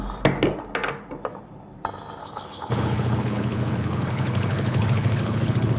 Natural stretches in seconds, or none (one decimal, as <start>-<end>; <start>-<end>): 0.0-2.2